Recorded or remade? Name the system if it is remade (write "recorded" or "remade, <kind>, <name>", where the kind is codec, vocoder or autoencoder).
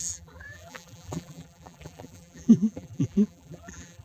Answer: remade, vocoder, BigVGAN v2